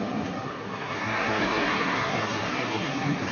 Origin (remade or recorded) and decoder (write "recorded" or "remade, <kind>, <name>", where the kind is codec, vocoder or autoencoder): remade, codec, SNAC